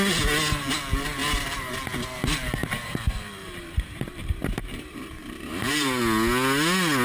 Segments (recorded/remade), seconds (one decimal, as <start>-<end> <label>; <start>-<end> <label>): 0.0-1.2 recorded; 1.2-1.7 remade; 1.7-2.6 recorded; 2.6-6.0 remade; 6.0-7.0 recorded

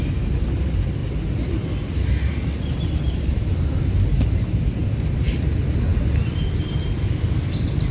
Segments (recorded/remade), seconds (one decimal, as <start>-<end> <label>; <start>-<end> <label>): 0.0-1.0 recorded; 1.0-3.8 remade; 3.8-4.8 recorded; 4.8-5.5 remade; 5.5-5.9 recorded; 5.9-7.1 remade; 7.1-7.9 recorded